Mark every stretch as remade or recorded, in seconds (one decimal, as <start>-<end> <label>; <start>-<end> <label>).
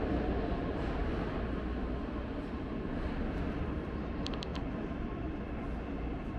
0.0-4.5 recorded; 4.5-6.4 remade